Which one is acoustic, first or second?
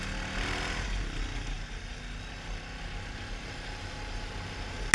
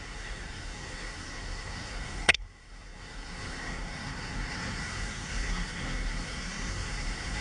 first